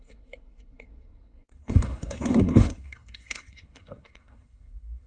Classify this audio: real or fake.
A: fake